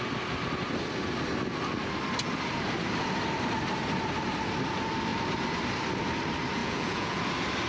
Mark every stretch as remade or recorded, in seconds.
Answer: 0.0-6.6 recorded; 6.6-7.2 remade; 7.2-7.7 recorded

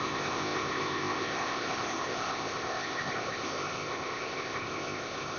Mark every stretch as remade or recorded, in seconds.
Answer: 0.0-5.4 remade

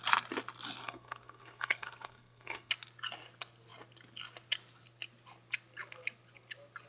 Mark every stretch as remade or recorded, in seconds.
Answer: 0.0-0.8 recorded; 0.8-2.7 remade; 2.7-6.9 recorded